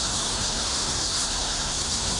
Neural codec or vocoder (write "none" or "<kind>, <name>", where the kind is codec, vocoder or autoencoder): codec, SNAC